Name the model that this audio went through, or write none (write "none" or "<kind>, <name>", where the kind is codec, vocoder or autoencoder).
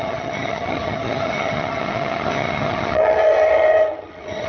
vocoder, HiFi-GAN